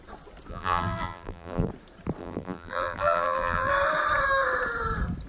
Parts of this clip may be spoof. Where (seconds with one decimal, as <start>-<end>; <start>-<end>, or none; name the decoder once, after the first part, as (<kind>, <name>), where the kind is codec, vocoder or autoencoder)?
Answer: 0.5-1.7 (vocoder, BigVGAN v2); 2.2-3.7